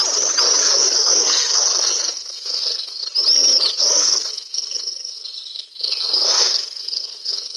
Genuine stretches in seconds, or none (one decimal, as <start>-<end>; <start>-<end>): 0.0-0.6; 3.0-3.8